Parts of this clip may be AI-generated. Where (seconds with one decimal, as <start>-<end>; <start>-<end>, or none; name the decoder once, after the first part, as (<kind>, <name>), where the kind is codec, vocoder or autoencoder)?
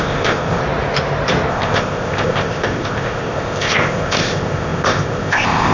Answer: 0.0-0.6 (codec, ZipCodec); 1.5-5.7